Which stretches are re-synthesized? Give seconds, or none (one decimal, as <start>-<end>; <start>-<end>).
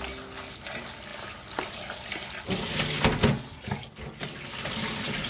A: none